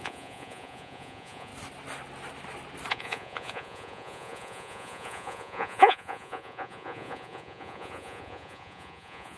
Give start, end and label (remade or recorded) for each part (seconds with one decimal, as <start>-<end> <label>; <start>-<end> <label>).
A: 0.0-1.5 remade; 1.5-2.9 recorded; 2.9-9.4 remade